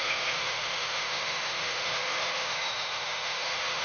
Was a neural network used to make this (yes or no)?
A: yes